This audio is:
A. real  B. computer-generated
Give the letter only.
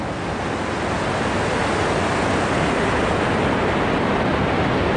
A